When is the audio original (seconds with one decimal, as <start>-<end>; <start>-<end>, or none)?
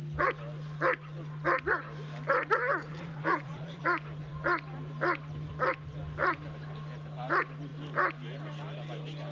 0.0-2.9; 3.8-9.3